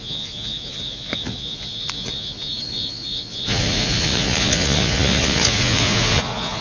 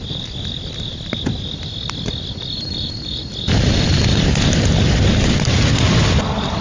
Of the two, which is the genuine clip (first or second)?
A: second